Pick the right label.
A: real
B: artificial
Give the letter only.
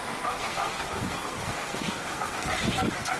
B